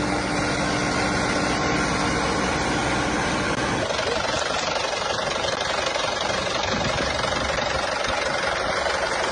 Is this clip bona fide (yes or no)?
yes